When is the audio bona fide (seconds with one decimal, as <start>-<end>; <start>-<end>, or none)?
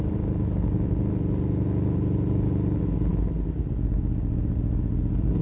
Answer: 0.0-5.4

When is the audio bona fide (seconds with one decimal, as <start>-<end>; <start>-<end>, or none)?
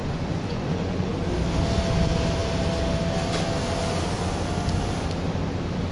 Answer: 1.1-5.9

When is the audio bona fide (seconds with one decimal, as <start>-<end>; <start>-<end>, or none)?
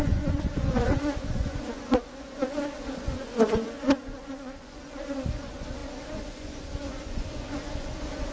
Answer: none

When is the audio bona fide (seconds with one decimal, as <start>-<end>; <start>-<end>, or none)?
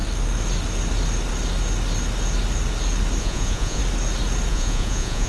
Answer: 0.0-3.2; 3.8-4.5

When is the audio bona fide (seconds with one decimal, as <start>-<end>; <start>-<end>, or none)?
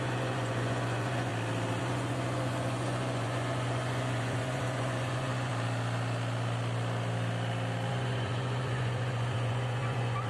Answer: 1.3-1.8; 5.5-7.9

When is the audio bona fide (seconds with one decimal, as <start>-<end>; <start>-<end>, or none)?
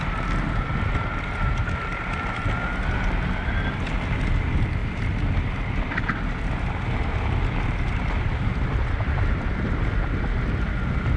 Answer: 0.0-11.2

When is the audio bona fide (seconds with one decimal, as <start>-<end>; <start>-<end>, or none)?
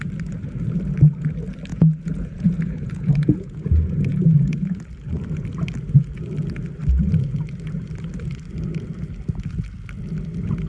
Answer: 0.0-1.7; 4.8-10.7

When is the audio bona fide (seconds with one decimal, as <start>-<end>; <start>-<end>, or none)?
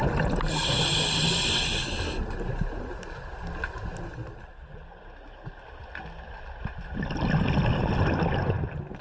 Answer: 0.0-9.0